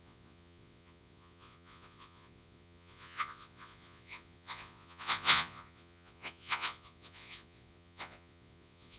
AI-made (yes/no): yes